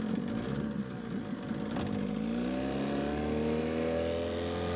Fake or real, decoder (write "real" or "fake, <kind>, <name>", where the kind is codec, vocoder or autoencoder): real